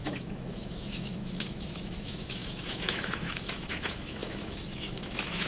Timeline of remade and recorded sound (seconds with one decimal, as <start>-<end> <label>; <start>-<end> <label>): 0.0-5.5 remade